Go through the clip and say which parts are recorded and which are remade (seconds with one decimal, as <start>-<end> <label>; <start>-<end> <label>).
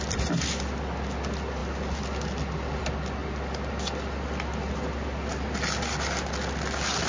0.0-7.1 recorded